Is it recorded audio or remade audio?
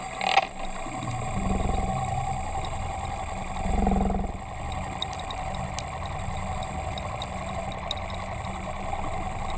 recorded